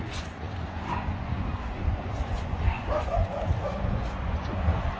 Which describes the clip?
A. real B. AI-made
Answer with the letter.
B